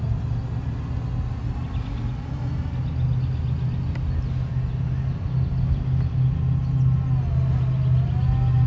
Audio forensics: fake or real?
real